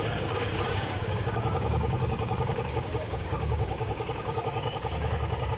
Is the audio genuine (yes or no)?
no